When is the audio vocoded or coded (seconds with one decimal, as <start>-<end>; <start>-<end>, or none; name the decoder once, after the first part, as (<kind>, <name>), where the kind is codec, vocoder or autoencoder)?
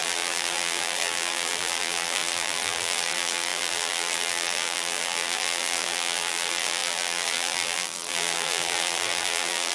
0.0-9.7 (vocoder, BigVGAN v2)